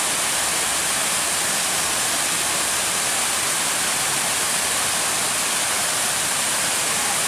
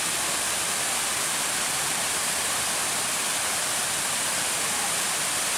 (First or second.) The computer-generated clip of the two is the second